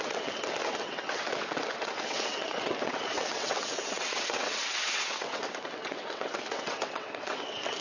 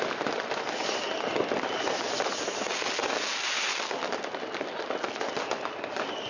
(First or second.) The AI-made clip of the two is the first